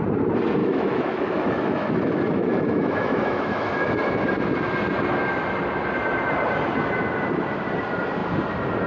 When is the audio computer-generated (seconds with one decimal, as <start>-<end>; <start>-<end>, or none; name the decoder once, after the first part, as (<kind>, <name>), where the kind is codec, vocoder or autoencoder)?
0.6-4.1 (autoencoder, DAC-VAE)